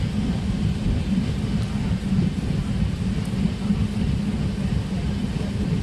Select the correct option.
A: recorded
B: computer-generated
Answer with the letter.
A